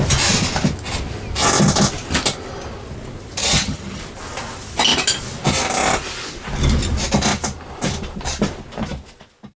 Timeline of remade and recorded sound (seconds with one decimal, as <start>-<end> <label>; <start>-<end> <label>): 0.0-3.4 recorded; 3.4-4.0 remade; 4.0-9.6 recorded